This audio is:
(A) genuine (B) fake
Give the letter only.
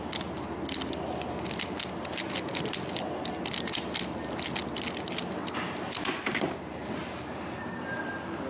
A